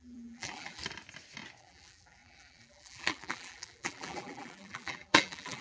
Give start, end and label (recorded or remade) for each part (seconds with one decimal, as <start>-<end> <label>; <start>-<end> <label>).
0.0-0.8 remade; 0.8-1.6 recorded; 1.6-5.6 remade

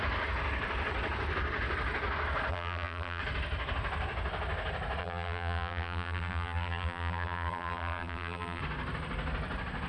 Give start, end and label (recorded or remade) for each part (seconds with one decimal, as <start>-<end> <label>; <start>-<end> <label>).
0.0-2.5 recorded; 2.5-3.2 remade; 3.2-5.0 recorded; 5.0-8.6 remade; 8.6-9.9 recorded